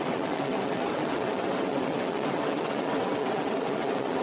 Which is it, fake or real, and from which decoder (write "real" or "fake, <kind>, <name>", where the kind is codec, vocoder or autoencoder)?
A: fake, vocoder, WaveNeXt